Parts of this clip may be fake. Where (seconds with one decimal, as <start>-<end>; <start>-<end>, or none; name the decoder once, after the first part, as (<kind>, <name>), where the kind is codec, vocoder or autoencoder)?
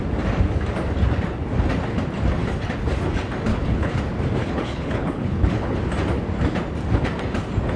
3.5-4.0 (codec, HILCodec); 4.4-5.8